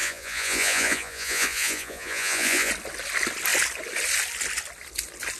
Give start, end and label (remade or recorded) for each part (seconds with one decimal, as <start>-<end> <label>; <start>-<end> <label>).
0.0-2.7 remade; 2.7-5.4 recorded